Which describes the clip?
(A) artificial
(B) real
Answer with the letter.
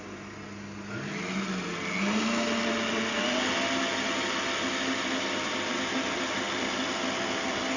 B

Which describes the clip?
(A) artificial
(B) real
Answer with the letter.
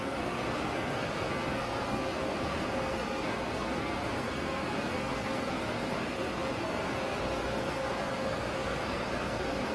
A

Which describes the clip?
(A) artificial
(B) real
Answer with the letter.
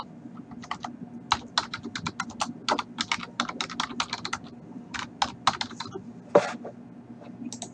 B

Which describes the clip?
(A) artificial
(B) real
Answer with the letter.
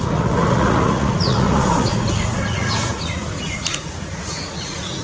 A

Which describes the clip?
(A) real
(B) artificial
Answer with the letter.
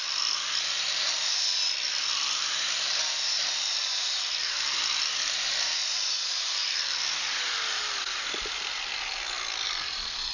B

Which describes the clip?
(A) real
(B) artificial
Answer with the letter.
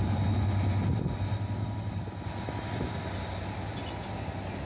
A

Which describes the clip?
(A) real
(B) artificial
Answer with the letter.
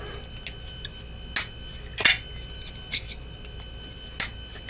A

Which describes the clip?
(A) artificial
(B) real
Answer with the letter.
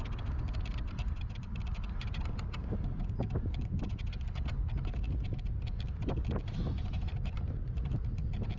B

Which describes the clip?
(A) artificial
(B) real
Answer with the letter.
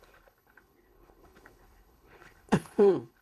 A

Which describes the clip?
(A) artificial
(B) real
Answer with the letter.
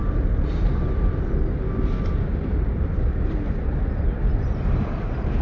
B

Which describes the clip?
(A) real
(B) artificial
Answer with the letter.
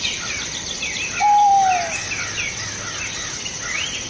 A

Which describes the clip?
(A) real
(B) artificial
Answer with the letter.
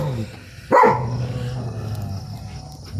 A